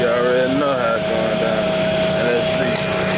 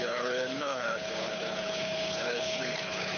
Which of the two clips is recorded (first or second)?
first